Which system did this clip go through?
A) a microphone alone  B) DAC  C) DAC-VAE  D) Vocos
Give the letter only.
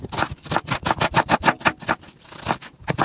A